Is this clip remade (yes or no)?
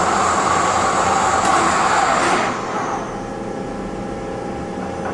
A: no